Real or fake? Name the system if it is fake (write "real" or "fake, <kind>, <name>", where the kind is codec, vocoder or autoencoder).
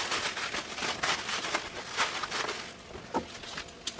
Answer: real